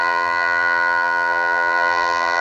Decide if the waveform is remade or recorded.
remade